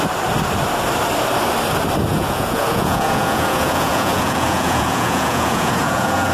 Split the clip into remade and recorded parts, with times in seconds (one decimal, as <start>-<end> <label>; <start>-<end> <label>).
0.0-2.1 recorded; 2.1-6.3 remade